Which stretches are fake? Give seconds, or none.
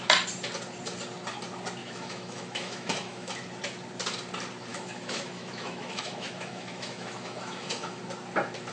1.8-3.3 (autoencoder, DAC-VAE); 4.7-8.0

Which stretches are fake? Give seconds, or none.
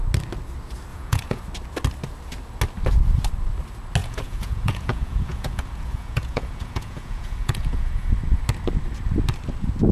0.9-1.4 (vocoder, Vocos); 4.0-8.1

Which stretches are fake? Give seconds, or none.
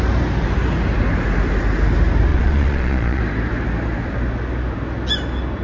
2.3-3.2 (vocoder, Vocos)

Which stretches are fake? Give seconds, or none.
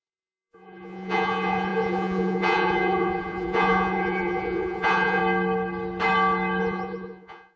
0.0-5.2 (vocoder, Vocos); 6.6-7.6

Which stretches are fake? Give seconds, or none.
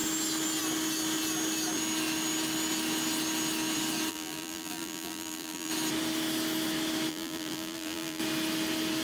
4.1-5.7 (vocoder, BigVGAN v2); 7.1-8.2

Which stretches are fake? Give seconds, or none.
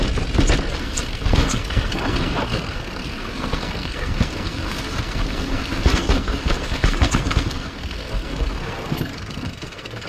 0.7-10.1 (codec, SNAC)